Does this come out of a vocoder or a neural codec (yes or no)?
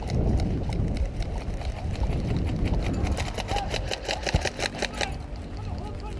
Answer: no